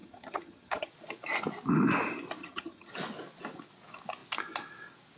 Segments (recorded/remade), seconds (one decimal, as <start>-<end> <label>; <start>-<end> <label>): 0.0-0.9 remade; 0.9-2.4 recorded; 2.4-2.9 remade; 2.9-5.2 recorded